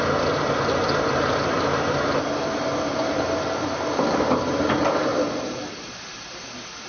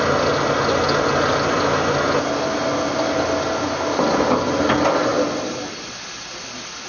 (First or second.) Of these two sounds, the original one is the second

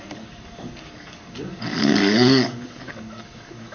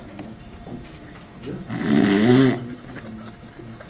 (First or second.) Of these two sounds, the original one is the second